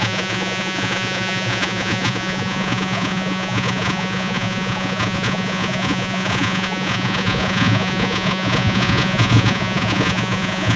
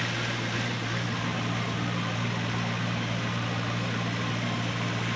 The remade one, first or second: first